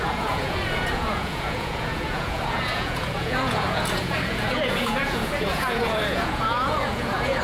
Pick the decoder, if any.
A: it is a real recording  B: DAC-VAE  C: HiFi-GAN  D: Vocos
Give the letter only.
D